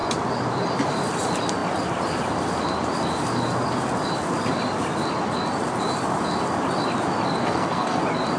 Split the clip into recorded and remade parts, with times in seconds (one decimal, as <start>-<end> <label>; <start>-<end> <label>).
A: 0.0-7.4 recorded; 7.4-8.0 remade; 8.0-8.4 recorded